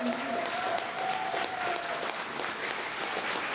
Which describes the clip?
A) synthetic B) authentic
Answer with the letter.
B